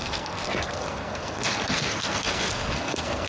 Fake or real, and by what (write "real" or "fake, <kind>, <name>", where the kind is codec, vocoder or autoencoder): fake, codec, SNAC